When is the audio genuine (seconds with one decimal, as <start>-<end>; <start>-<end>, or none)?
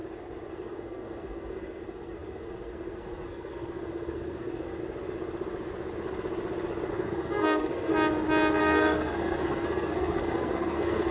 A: 0.0-0.5; 4.8-6.9; 7.9-8.6